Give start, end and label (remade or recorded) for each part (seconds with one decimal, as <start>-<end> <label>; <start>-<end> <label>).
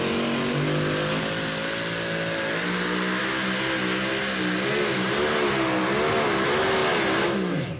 0.0-7.8 recorded